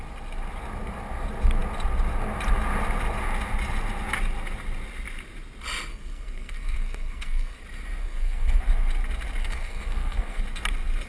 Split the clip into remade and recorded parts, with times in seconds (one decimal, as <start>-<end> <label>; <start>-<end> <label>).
0.0-5.9 recorded; 5.9-7.6 remade; 7.6-8.0 recorded; 8.0-8.6 remade; 8.6-9.4 recorded; 9.4-10.4 remade; 10.4-11.1 recorded